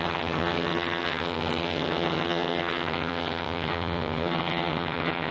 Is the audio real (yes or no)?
no